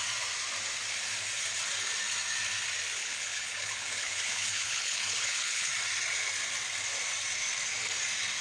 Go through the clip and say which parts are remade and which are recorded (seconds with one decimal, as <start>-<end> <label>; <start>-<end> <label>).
0.0-3.0 recorded; 3.0-5.7 remade; 5.7-8.4 recorded